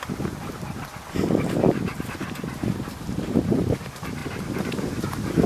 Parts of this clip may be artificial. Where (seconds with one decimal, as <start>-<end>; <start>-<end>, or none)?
2.2-3.6